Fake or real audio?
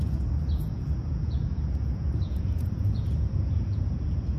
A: fake